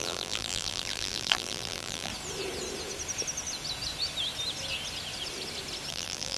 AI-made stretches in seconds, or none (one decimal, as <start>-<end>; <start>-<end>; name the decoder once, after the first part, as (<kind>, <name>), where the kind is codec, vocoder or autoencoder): 0.0-2.1 (vocoder, BigVGAN v2); 5.9-6.4